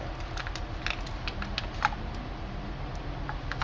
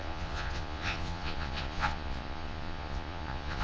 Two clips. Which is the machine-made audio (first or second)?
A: second